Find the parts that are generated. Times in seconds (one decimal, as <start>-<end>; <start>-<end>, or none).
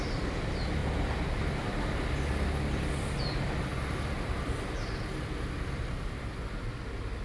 3.7-4.5